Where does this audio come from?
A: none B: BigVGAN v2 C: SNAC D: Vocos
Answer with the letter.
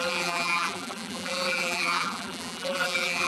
B